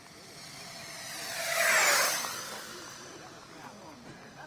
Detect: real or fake fake